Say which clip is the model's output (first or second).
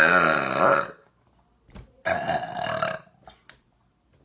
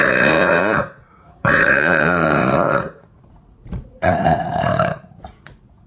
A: second